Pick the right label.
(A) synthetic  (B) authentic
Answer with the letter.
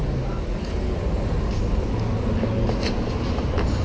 B